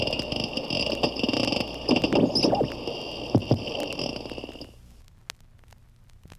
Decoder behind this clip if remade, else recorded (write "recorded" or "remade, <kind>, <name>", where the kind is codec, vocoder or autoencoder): recorded